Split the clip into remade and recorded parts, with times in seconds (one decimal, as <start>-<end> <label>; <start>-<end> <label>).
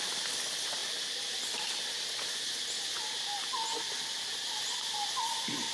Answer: 0.0-5.7 recorded